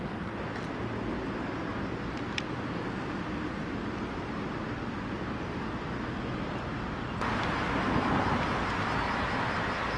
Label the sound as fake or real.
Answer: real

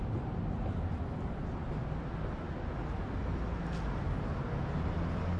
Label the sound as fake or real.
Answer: real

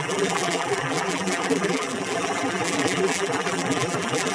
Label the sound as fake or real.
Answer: fake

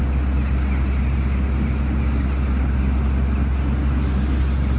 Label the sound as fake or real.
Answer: real